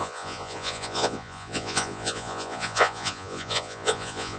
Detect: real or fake fake